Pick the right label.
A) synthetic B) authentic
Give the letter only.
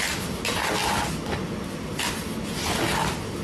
B